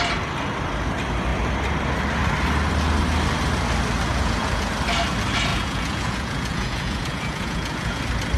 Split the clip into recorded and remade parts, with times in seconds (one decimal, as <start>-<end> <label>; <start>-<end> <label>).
0.0-4.1 recorded; 4.1-4.7 remade; 4.7-5.5 recorded; 5.5-8.0 remade; 8.0-8.4 recorded